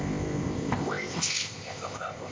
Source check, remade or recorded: remade